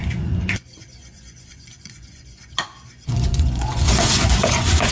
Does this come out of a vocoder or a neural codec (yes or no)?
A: yes